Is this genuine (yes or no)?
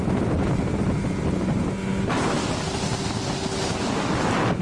yes